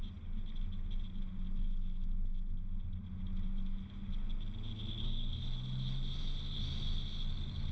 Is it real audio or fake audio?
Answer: real